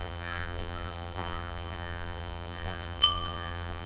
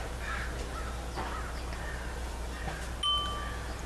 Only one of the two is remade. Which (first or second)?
first